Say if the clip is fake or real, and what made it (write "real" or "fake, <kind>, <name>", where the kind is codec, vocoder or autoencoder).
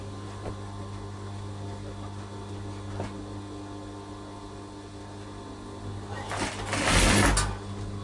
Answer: real